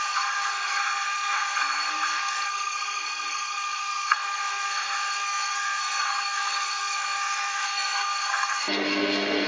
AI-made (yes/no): yes